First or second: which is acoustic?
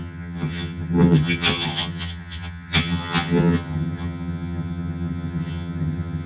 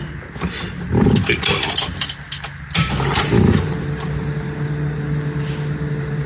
second